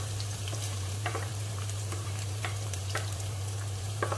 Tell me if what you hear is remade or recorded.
remade